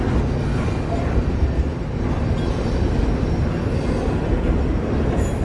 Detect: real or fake real